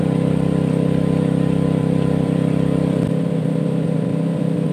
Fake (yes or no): yes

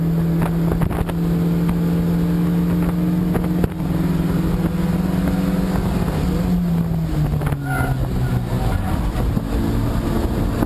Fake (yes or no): no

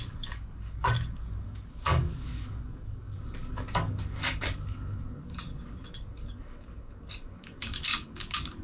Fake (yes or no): yes